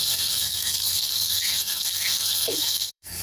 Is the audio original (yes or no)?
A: no